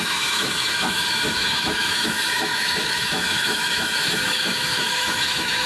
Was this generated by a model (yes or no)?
yes